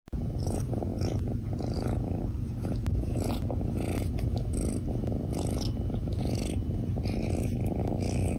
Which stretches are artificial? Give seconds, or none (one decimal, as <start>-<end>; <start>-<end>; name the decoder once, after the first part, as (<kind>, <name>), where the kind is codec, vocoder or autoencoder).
7.8-8.4 (codec, DAC)